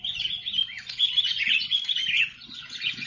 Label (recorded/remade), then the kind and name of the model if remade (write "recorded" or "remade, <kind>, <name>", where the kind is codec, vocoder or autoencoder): remade, vocoder, Vocos